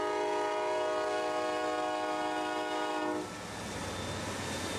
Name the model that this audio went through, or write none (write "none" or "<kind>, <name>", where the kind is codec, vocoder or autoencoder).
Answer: none